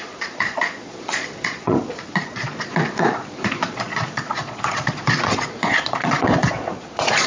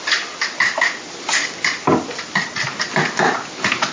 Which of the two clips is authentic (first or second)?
second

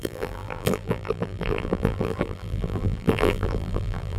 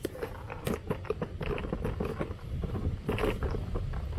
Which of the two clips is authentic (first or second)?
second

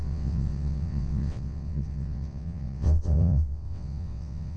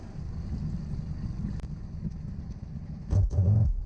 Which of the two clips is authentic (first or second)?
second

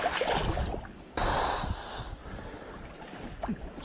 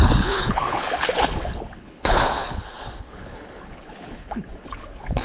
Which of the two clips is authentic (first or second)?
first